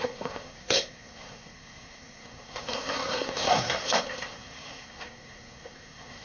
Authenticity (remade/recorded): remade